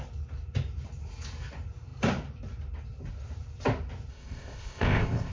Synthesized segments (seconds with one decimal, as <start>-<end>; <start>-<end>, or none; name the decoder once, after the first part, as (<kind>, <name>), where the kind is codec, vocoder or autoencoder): 4.1-5.3 (codec, ZipCodec)